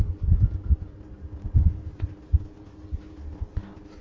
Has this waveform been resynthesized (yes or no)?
no